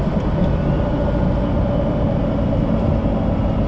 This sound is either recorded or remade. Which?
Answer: recorded